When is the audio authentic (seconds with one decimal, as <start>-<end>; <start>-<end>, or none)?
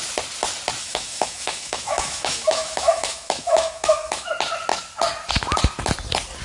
0.0-0.8; 4.3-6.4